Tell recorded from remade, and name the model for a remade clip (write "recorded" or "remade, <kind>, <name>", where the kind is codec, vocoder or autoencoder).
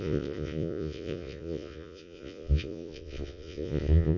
remade, vocoder, Vocos